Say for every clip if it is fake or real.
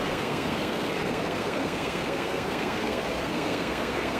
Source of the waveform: fake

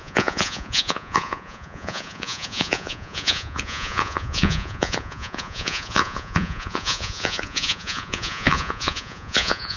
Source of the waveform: fake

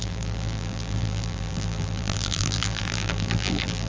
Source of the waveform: fake